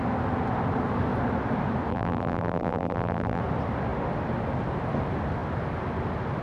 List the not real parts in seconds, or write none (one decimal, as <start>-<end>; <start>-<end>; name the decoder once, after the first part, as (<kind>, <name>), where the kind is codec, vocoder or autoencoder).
1.9-3.4 (vocoder, BigVGAN v2)